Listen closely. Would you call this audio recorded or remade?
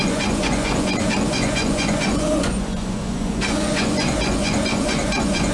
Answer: remade